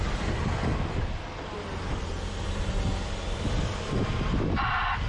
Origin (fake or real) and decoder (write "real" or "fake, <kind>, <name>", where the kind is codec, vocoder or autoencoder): real